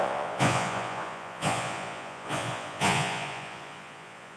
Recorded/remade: remade